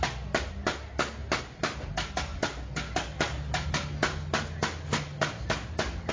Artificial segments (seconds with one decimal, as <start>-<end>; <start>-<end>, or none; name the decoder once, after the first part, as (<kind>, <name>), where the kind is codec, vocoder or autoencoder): none